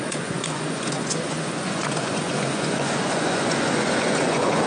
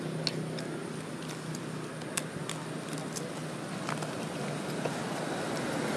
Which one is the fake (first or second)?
first